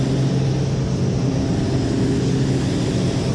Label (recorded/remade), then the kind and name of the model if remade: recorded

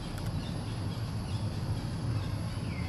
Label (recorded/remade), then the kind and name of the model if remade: recorded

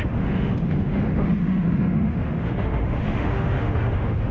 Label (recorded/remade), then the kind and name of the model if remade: remade, autoencoder, DAC-VAE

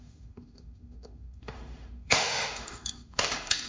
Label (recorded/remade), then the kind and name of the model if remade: remade, autoencoder, DAC-VAE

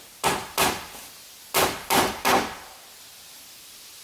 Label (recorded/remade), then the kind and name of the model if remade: recorded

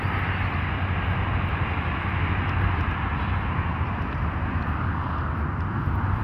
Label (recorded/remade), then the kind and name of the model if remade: recorded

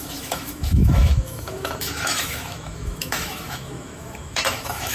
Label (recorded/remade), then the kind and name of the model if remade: remade, autoencoder, DAC-VAE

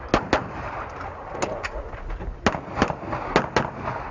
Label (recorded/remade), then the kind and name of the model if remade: recorded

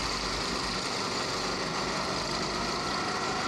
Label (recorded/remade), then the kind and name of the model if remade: recorded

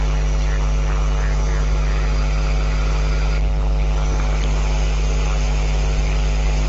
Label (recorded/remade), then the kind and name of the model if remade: recorded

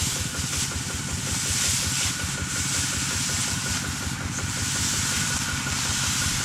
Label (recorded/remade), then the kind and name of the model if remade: recorded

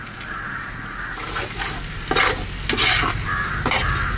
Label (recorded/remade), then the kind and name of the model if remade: recorded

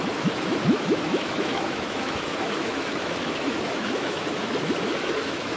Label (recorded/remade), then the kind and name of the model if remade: remade, autoencoder, DAC-VAE